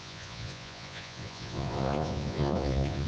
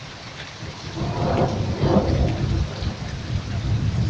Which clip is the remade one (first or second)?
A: first